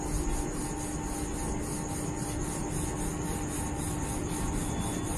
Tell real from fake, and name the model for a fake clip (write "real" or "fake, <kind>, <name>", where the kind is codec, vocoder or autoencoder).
real